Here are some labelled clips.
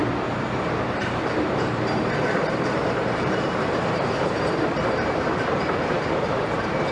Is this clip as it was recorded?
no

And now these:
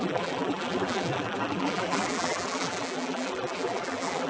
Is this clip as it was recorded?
no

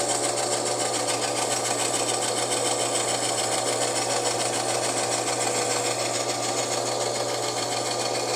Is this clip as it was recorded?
yes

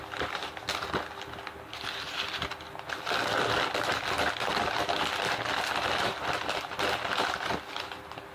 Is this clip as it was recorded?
yes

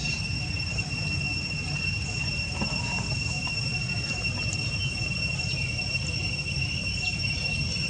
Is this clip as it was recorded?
no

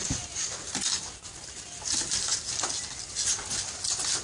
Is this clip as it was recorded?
yes